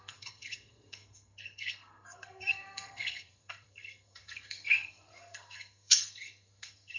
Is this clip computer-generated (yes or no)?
yes